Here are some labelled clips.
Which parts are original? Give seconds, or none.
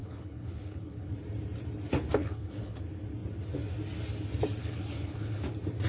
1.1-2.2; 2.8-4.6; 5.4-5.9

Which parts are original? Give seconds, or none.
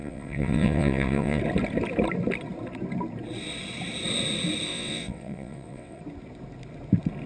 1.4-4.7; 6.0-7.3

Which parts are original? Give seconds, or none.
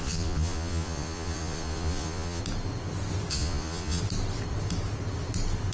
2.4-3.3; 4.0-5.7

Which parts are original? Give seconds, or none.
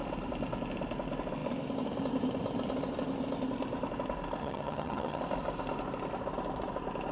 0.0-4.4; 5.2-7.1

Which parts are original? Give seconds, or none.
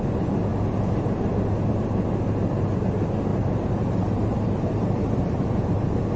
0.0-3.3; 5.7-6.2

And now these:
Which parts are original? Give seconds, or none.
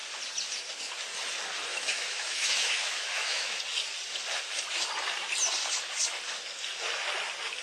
0.0-1.7; 3.6-7.6